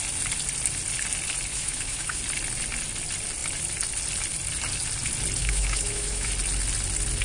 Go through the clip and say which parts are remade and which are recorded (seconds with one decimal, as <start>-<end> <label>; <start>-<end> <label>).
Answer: 0.0-1.5 recorded; 1.5-2.2 remade; 2.2-5.4 recorded; 5.4-6.3 remade; 6.3-7.2 recorded